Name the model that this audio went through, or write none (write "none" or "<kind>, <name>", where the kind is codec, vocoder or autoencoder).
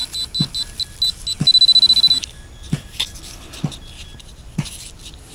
none